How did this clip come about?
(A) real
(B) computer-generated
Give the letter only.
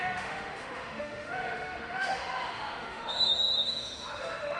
B